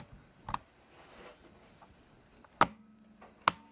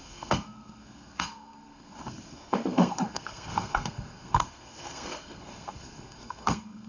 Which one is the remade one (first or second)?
second